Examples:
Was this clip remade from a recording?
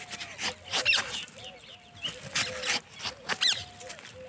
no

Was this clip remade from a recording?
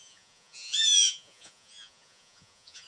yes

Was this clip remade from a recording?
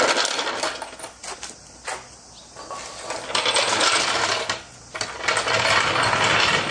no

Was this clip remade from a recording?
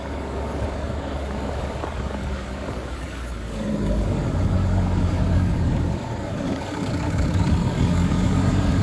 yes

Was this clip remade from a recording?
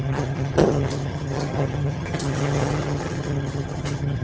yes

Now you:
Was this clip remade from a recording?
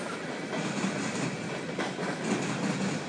no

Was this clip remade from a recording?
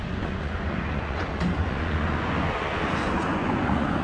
yes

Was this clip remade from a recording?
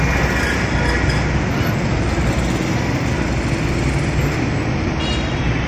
no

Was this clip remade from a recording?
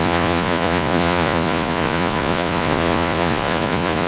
yes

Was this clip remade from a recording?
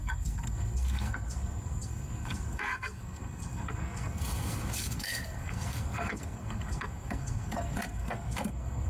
yes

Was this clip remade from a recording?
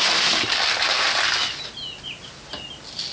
no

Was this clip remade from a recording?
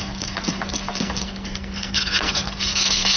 yes